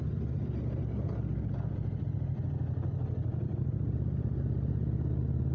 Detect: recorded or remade recorded